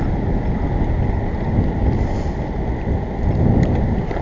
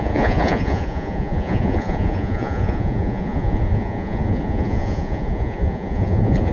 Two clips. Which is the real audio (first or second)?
first